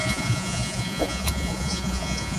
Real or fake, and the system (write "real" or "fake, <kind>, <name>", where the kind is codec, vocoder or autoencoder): fake, vocoder, Vocos